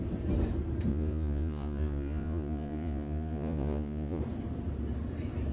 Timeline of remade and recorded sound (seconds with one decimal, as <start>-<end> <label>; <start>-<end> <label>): 0.0-0.9 recorded; 0.9-4.2 remade; 4.2-5.5 recorded